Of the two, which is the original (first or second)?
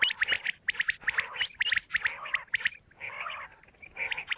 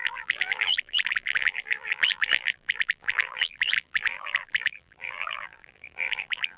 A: first